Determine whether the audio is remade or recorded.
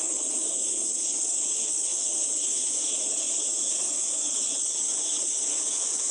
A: remade